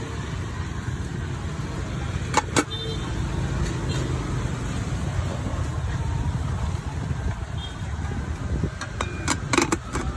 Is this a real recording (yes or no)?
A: yes